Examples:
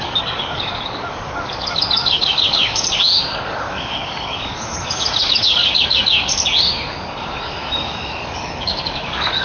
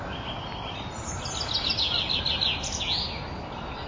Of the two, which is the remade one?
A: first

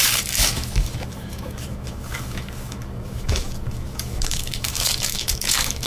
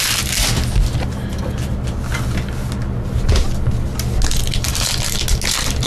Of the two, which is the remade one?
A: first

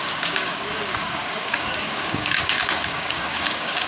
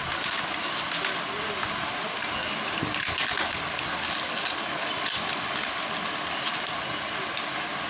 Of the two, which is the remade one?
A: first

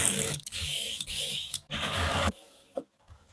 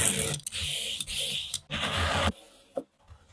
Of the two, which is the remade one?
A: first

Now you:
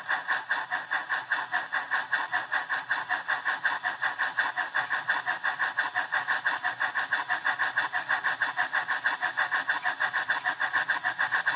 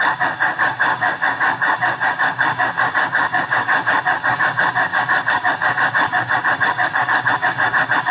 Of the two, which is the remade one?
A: second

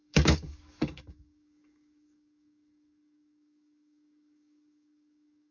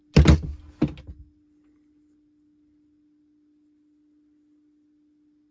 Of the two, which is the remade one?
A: first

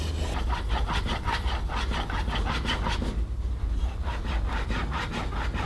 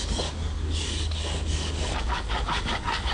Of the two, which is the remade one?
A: second